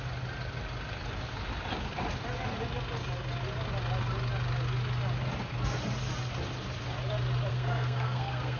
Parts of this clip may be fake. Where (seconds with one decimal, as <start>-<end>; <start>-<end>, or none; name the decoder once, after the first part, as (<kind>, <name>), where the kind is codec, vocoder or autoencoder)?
7.5-8.6 (codec, SNAC)